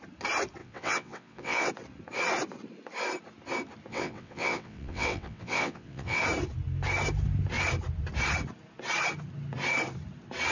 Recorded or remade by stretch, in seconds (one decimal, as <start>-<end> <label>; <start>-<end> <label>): 0.0-0.6 recorded; 0.6-1.7 remade; 1.7-3.9 recorded; 3.9-6.2 remade; 6.2-10.5 recorded